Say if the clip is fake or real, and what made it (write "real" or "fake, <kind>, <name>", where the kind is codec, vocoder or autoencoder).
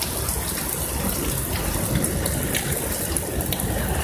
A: real